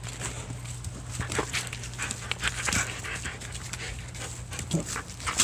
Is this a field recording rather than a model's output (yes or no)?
yes